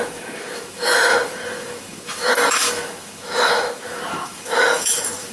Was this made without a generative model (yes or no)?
no